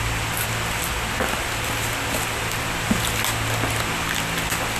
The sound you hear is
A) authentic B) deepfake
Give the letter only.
A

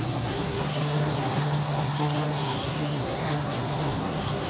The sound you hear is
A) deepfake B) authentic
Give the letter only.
A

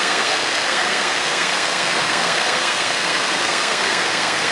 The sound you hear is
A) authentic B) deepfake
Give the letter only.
B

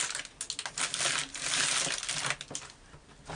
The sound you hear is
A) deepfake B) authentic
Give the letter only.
B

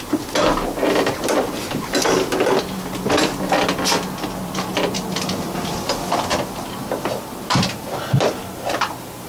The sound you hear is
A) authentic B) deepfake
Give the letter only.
A